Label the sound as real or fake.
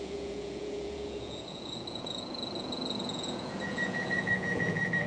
fake